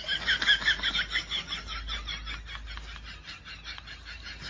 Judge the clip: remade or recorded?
recorded